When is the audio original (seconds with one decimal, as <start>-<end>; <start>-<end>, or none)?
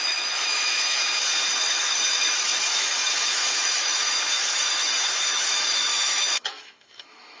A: 1.0-1.6